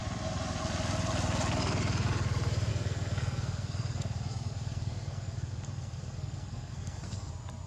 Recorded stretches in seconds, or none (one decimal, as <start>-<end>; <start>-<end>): 0.0-2.7; 7.3-7.7